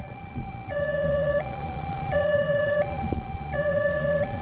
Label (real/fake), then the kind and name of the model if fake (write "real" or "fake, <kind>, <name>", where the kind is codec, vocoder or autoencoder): fake, vocoder, Vocos